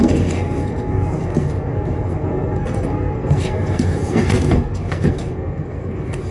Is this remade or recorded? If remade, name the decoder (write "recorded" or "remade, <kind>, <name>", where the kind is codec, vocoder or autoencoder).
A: remade, codec, SNAC